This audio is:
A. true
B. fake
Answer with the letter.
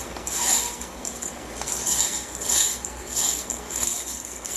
B